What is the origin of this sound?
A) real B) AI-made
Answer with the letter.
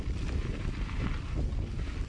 B